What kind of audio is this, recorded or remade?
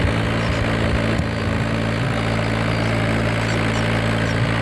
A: recorded